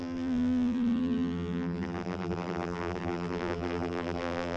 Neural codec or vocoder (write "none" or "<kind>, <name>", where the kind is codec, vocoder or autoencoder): vocoder, BigVGAN v2